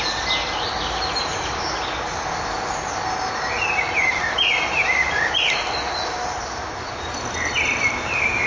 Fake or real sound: real